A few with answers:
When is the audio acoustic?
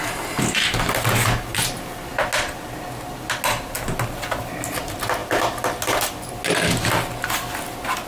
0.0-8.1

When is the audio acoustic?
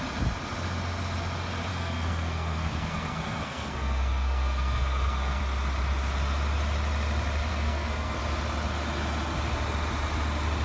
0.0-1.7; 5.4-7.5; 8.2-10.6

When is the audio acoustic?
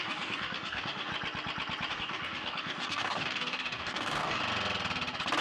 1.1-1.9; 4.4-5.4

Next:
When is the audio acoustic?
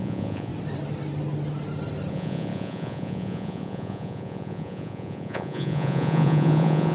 0.5-2.1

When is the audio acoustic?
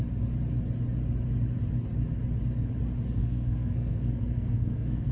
0.0-3.2